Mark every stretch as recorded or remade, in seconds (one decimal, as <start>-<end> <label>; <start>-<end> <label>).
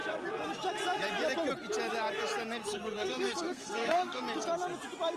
0.0-2.6 recorded; 2.6-4.2 remade; 4.2-5.2 recorded